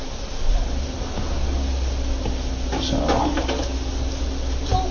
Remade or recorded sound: recorded